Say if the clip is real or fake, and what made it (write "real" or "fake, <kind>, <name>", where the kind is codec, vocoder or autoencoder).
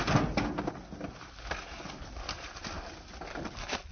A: real